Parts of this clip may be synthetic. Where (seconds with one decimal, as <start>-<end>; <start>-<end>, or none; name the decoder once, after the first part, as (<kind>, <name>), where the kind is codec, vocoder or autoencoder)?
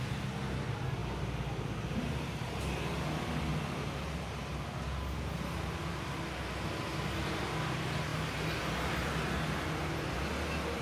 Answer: none